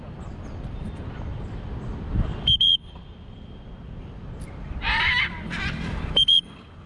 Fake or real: fake